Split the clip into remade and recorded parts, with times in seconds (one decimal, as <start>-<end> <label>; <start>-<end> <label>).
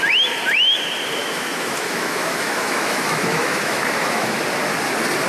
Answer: 0.0-1.2 recorded; 1.2-4.4 remade; 4.4-5.3 recorded